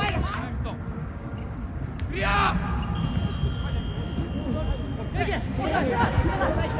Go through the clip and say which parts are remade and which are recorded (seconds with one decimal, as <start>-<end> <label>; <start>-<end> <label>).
0.0-1.0 recorded; 1.0-1.5 remade; 1.5-6.8 recorded